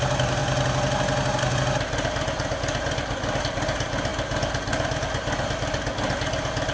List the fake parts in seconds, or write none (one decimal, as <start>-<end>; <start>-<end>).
none